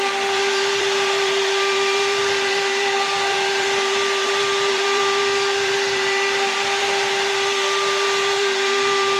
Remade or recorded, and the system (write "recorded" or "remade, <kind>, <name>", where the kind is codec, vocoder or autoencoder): remade, vocoder, BigVGAN v2